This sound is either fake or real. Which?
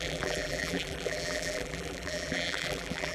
fake